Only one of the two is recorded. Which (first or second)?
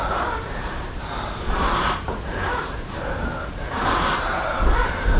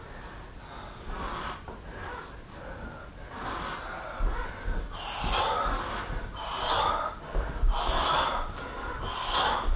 second